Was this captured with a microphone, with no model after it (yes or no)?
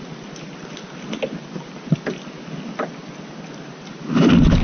yes